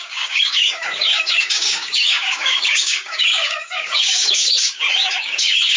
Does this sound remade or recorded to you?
remade